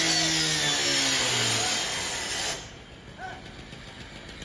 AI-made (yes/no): no